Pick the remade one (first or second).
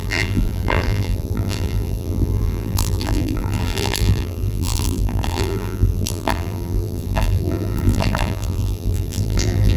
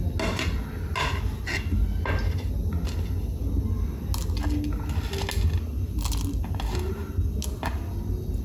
first